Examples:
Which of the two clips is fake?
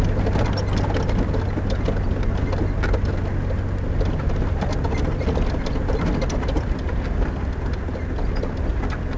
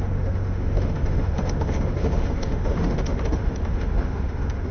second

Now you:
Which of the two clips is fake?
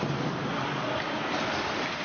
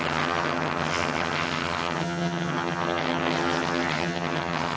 second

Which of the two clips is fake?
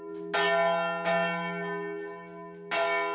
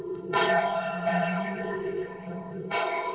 second